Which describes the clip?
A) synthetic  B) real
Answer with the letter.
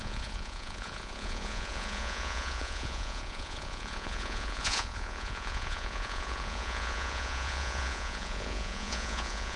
A